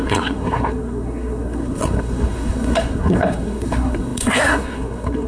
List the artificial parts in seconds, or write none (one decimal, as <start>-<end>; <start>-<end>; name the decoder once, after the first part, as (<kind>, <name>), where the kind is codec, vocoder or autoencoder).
0.0-5.3 (codec, SNAC)

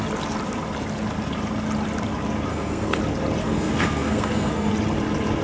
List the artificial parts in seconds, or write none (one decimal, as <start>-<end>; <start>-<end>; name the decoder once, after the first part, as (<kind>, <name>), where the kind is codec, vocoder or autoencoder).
2.5-3.0 (codec, SNAC); 3.4-4.7